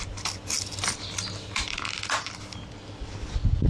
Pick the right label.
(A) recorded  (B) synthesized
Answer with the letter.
B